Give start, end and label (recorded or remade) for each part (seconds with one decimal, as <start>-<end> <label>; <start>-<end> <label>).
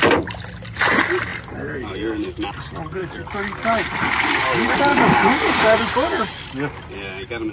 0.0-4.9 recorded; 4.9-5.8 remade; 5.8-7.5 recorded